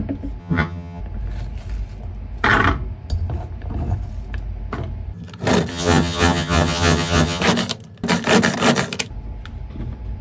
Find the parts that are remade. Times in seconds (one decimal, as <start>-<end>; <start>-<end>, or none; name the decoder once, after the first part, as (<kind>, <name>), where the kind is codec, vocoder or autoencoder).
0.4-1.0 (vocoder, HiFi-GAN); 5.7-7.4